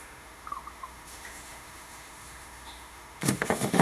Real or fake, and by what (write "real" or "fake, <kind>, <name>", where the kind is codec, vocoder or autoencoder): fake, autoencoder, DAC-VAE